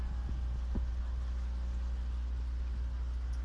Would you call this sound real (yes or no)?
yes